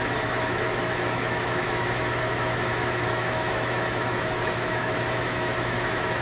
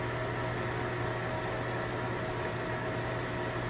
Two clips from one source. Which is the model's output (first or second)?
first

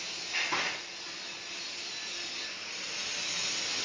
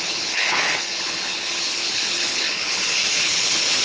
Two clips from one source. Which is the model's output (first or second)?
second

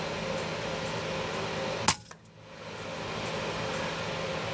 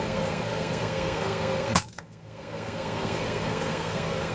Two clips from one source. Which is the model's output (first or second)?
second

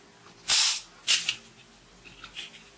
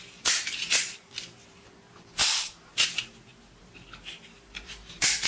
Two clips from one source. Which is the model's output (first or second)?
second